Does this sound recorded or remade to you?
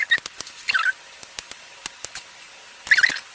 recorded